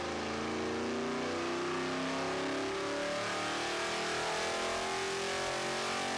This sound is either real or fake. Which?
real